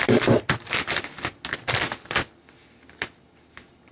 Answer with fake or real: real